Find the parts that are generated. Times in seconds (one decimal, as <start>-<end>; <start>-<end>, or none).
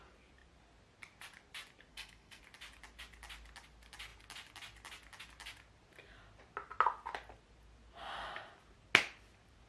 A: 1.9-2.4